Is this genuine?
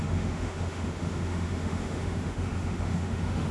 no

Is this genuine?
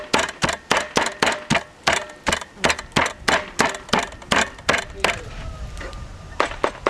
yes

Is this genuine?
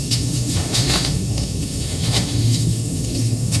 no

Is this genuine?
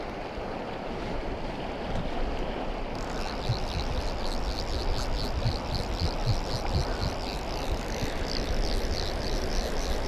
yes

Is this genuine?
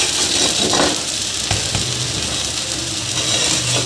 yes